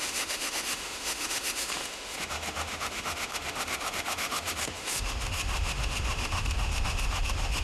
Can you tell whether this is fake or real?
fake